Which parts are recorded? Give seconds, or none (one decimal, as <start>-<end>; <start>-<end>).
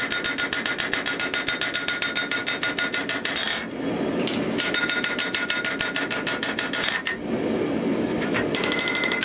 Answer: 0.0-9.2